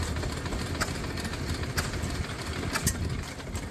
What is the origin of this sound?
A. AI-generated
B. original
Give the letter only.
B